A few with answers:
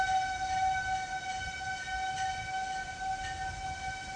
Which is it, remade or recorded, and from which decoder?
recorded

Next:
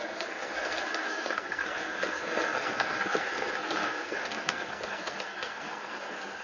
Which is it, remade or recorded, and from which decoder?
remade, codec, SNAC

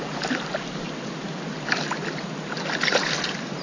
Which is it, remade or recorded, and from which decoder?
recorded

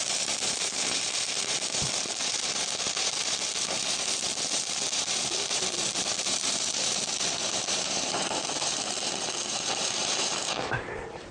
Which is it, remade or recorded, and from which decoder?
remade, vocoder, BigVGAN v2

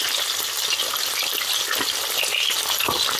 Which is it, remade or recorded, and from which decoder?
recorded